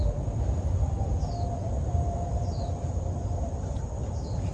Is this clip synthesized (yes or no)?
no